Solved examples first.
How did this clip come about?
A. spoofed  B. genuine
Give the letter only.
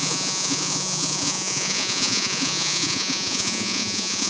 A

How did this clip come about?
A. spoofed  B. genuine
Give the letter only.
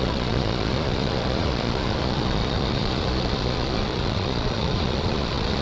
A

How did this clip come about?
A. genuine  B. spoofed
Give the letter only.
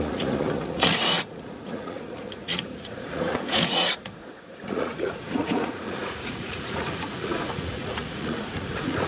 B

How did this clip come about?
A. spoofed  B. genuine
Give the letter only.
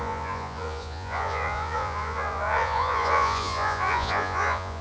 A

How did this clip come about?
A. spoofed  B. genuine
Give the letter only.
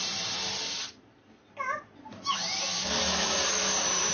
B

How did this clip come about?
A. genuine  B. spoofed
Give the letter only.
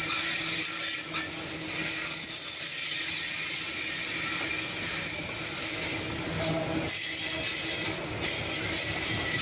A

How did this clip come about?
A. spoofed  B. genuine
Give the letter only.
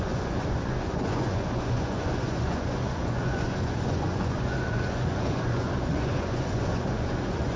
A